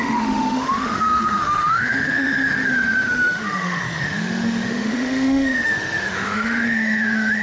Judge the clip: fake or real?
fake